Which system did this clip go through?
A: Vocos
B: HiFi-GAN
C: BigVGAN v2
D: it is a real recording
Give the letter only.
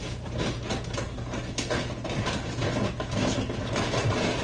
D